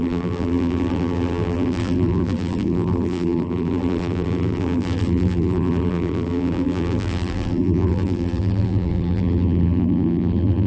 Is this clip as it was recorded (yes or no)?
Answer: no